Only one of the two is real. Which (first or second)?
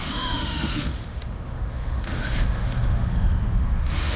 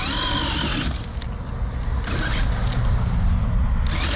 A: second